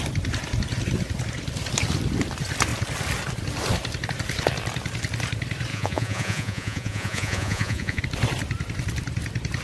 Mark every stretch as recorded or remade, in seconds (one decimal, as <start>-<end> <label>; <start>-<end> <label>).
0.0-5.7 recorded; 5.7-8.0 remade; 8.0-9.6 recorded